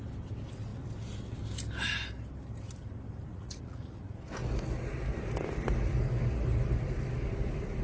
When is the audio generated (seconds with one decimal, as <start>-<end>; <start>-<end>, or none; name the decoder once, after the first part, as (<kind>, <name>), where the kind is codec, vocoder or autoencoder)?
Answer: 3.3-4.0 (vocoder, Vocos)